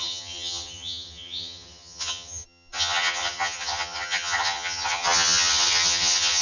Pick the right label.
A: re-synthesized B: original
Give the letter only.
A